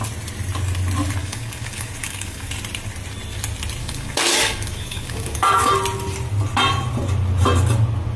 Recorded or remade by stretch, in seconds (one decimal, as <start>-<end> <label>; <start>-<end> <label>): 0.0-1.2 recorded; 1.2-2.5 remade; 2.5-3.8 recorded; 3.8-5.7 remade; 5.7-8.2 recorded